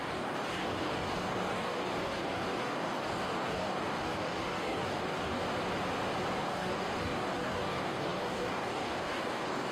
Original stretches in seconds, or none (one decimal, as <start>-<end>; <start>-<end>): 5.4-6.4